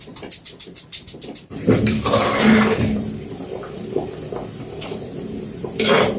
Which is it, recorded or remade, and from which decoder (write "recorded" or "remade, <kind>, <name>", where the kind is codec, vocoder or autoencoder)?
remade, vocoder, BigVGAN v2